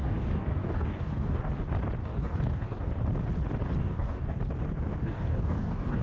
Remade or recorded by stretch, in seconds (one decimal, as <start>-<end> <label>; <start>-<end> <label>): 0.0-1.5 remade; 1.5-2.0 recorded; 2.0-2.9 remade; 2.9-3.8 recorded; 3.8-4.4 remade; 4.4-5.0 recorded; 5.0-6.0 remade